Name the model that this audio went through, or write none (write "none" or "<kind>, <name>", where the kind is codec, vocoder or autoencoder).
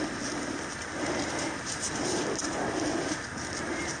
none